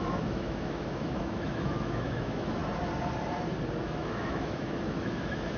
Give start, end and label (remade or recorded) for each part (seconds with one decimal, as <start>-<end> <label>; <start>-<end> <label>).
0.0-2.6 remade; 2.6-3.8 recorded; 3.8-5.6 remade